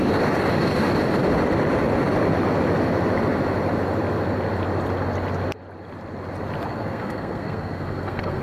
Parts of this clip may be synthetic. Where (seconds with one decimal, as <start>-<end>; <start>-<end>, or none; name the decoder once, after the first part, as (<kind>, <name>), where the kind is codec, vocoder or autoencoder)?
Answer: 6.7-8.4 (codec, SNAC)